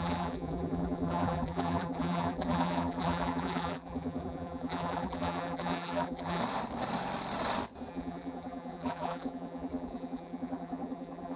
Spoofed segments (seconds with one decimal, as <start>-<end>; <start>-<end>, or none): 0.0-6.4; 7.9-11.4